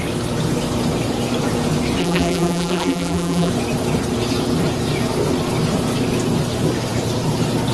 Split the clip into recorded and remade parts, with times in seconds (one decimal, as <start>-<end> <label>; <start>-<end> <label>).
0.0-2.0 recorded; 2.0-3.5 remade; 3.5-7.7 recorded